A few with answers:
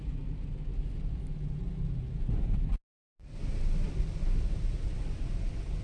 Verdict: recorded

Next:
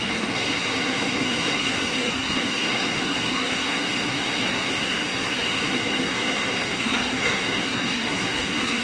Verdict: remade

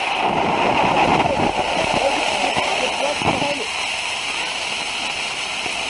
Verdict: recorded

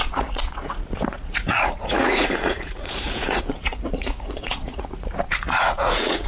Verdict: remade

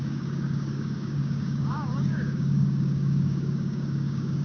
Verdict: remade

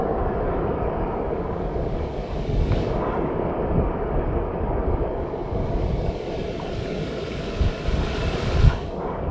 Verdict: remade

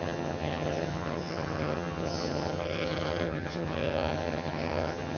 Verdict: remade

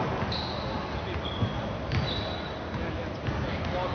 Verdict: recorded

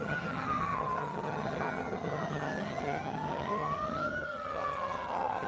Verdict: remade